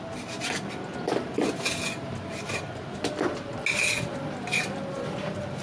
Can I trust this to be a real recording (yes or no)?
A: yes